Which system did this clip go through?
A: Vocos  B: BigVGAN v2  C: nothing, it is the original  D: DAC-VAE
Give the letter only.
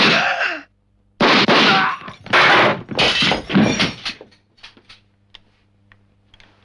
C